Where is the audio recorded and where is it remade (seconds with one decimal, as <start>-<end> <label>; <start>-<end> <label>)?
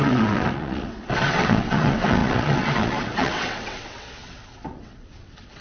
0.0-5.6 remade